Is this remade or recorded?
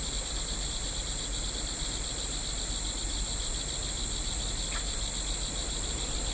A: recorded